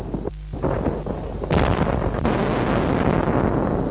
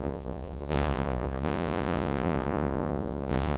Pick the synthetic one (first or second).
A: second